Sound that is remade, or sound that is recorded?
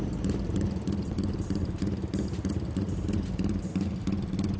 recorded